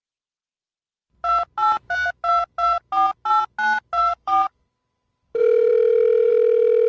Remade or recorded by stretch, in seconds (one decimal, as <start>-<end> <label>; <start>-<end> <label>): 0.0-4.0 recorded; 4.0-4.5 remade; 4.5-6.9 recorded